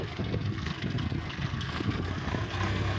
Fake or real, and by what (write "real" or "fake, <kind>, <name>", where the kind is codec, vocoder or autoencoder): fake, codec, SNAC